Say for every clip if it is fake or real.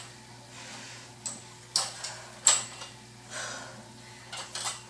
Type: real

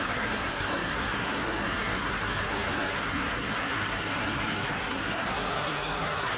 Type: fake